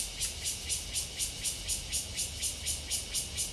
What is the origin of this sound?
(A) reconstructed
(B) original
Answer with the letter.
B